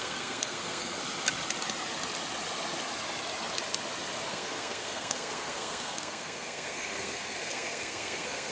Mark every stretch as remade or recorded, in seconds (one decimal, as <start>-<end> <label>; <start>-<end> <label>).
0.0-1.0 remade; 1.0-4.3 recorded; 4.3-8.5 remade